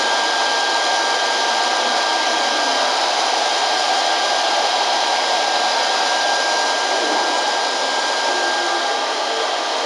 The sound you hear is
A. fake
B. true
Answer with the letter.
A